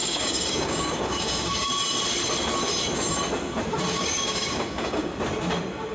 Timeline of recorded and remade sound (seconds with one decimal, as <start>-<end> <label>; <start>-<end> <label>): 0.0-1.7 remade; 1.7-3.9 recorded; 3.9-5.1 remade; 5.1-5.9 recorded